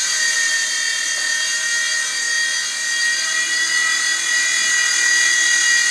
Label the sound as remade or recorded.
recorded